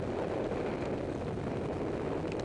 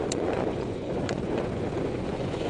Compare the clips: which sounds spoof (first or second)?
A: second